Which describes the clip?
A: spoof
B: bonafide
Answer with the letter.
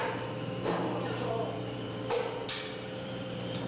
A